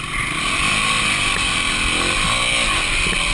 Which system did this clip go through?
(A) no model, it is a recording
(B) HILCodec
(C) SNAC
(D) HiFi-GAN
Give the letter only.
A